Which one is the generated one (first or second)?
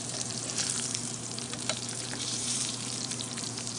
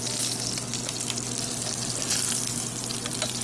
first